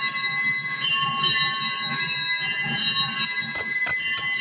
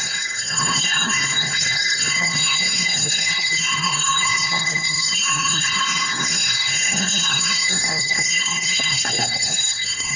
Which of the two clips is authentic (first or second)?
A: first